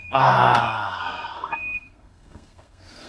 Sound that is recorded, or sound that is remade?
remade